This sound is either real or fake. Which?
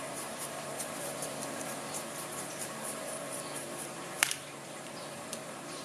fake